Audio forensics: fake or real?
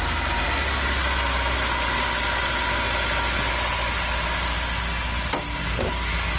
real